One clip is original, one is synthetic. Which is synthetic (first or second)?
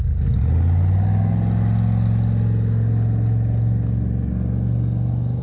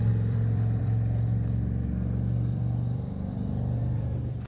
second